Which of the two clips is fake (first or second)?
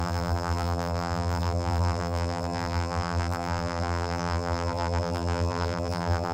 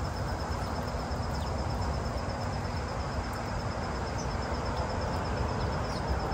first